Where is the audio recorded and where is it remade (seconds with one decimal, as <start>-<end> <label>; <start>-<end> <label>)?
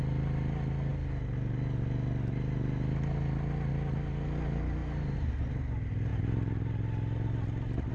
0.0-4.8 recorded; 4.8-5.5 remade; 5.5-7.9 recorded